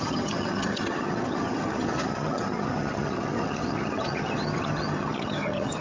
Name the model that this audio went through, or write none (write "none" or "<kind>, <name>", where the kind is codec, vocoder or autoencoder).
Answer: vocoder, HiFi-GAN